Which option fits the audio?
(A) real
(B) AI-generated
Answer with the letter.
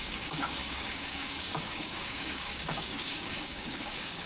B